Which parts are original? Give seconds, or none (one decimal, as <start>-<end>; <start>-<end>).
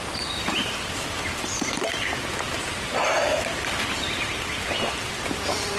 0.0-0.6; 3.6-5.8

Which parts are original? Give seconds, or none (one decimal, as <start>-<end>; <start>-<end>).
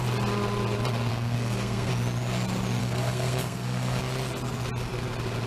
0.0-1.1; 1.9-2.8; 4.0-5.5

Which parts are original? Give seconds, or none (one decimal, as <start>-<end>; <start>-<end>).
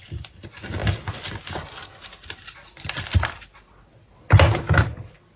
0.0-5.4